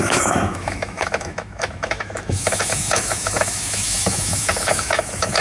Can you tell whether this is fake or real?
fake